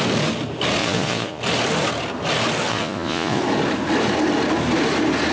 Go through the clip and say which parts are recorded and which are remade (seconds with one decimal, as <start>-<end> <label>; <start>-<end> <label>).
0.0-0.8 recorded; 0.8-1.4 remade; 1.4-2.7 recorded; 2.7-3.4 remade; 3.4-5.3 recorded